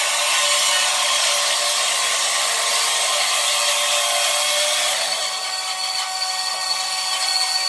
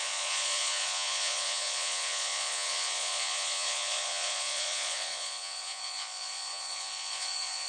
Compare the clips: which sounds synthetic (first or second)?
second